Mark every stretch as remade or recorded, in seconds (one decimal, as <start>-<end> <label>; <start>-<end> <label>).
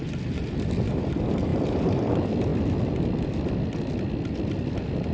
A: 0.0-1.5 recorded; 1.5-2.1 remade; 2.1-2.5 recorded; 2.5-3.7 remade; 3.7-5.1 recorded